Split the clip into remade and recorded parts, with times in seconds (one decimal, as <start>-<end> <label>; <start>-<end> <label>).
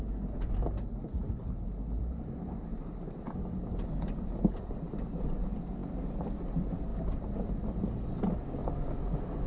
0.0-1.0 recorded; 1.0-2.0 remade; 2.0-9.5 recorded